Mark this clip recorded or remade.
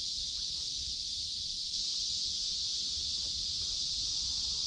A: remade